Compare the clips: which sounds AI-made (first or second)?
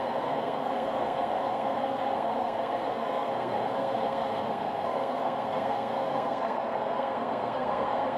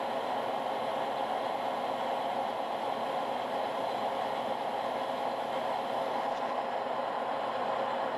first